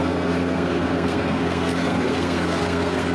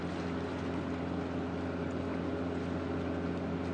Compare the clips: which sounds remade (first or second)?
first